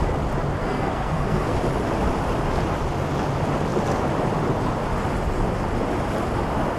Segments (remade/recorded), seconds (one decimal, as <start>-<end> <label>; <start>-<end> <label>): 0.0-0.6 recorded; 0.6-1.6 remade; 1.6-6.8 recorded